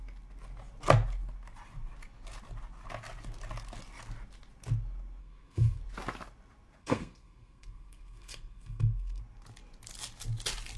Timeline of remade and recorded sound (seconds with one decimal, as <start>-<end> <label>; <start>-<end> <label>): 0.0-5.2 recorded; 5.2-5.8 remade; 5.8-6.8 recorded; 6.8-9.2 remade; 9.2-10.8 recorded